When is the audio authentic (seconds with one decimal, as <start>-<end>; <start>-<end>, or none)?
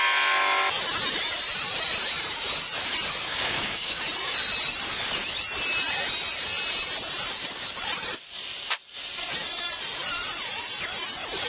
0.0-3.3; 4.0-11.5